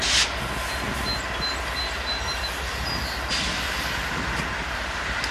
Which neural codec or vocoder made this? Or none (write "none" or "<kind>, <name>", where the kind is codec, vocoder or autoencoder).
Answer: none